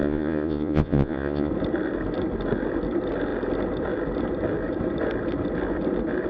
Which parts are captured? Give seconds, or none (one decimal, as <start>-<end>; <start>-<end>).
1.5-6.3